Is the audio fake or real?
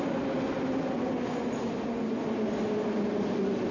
real